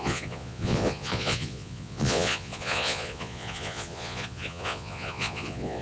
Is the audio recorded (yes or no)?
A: no